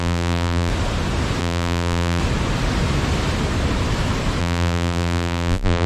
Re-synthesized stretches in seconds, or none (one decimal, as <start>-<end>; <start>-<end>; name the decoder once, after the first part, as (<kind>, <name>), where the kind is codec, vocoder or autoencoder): 0.0-0.7 (vocoder, BigVGAN v2); 1.4-2.2; 4.4-5.9